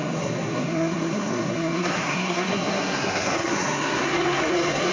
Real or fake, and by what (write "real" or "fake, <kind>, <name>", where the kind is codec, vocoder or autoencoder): fake, codec, SNAC